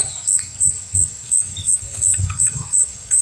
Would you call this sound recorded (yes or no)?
no